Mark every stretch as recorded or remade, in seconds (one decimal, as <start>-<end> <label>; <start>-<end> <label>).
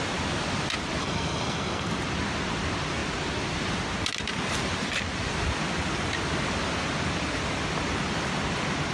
0.0-1.0 recorded; 1.0-1.9 remade; 1.9-8.9 recorded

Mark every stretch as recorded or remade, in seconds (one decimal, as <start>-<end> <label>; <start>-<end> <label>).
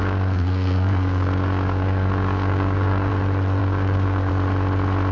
0.0-3.1 remade; 3.1-3.6 recorded; 3.6-4.3 remade; 4.3-5.1 recorded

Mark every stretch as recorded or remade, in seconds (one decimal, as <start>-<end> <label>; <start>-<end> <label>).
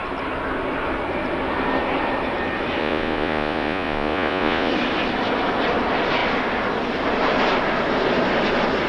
0.0-2.8 recorded; 2.8-4.7 remade; 4.7-8.9 recorded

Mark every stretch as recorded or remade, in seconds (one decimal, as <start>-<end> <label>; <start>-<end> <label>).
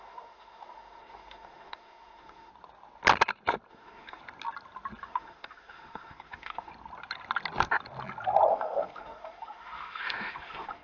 0.0-2.5 remade; 2.5-3.7 recorded; 3.7-4.2 remade; 4.2-5.0 recorded; 5.0-6.7 remade; 6.7-8.5 recorded; 8.5-10.8 remade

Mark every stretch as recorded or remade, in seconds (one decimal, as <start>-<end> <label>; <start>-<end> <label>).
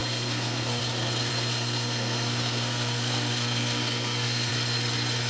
0.0-0.8 remade; 0.8-1.3 recorded; 1.3-4.5 remade; 4.5-5.3 recorded